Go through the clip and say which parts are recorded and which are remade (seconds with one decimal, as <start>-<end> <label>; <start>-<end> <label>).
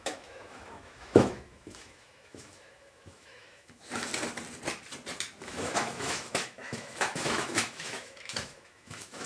0.0-4.1 remade; 4.1-5.4 recorded; 5.4-9.3 remade